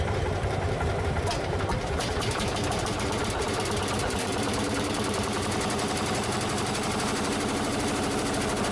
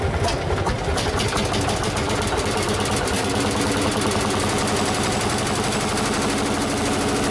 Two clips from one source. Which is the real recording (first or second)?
second